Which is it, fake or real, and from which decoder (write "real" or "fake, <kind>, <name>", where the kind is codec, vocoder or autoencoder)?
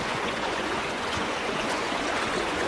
fake, vocoder, Vocos